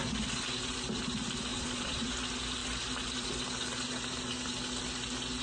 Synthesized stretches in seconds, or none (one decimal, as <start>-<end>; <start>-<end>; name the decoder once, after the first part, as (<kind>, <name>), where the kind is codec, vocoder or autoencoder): 1.5-2.1 (vocoder, Vocos)